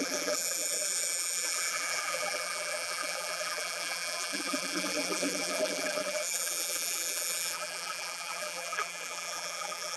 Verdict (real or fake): fake